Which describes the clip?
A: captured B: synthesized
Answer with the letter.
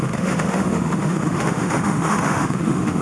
B